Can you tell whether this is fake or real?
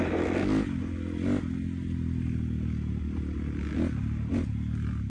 real